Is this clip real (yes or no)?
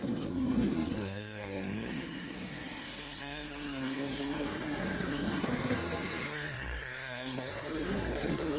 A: no